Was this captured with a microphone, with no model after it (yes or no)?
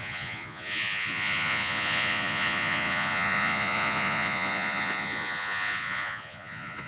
no